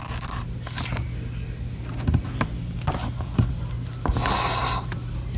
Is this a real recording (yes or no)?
yes